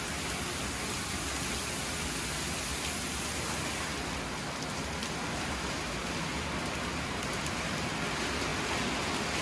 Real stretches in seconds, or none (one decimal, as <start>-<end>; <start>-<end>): 0.0-9.4